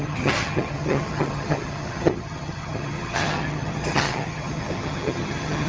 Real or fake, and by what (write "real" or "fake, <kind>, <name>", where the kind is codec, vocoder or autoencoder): fake, vocoder, HiFi-GAN